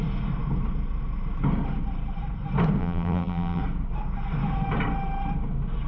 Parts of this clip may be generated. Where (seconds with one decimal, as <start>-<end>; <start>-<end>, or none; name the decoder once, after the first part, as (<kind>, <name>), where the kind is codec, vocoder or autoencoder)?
2.8-3.6 (vocoder, BigVGAN v2)